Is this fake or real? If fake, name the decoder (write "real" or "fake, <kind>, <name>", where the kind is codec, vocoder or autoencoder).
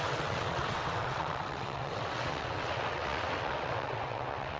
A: fake, vocoder, WaveNeXt